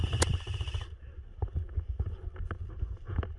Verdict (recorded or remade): recorded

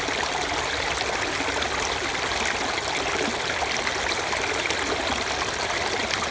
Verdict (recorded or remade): recorded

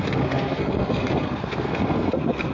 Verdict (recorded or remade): remade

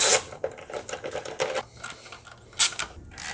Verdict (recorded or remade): recorded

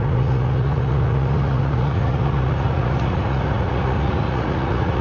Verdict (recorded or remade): remade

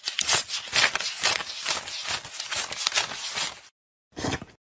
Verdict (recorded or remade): recorded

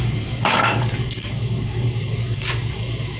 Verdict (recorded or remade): remade